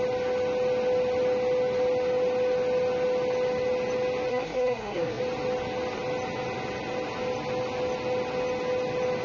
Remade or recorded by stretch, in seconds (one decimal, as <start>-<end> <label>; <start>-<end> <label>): 0.0-4.3 recorded; 4.3-5.2 remade; 5.2-9.2 recorded